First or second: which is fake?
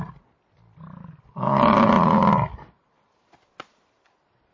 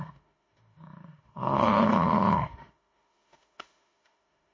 second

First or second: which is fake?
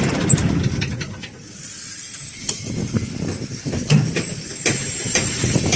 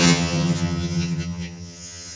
second